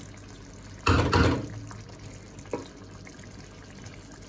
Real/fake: real